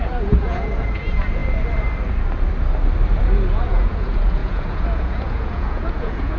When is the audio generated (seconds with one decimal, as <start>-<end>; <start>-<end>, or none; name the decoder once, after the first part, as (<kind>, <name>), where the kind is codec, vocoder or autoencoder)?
0.0-1.4 (vocoder, Vocos); 3.2-6.4